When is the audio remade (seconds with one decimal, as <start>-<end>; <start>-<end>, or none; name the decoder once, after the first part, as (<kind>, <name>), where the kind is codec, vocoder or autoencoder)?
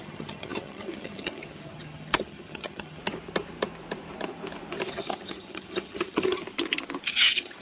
0.0-3.0 (vocoder, HiFi-GAN); 4.9-6.4; 7.1-7.6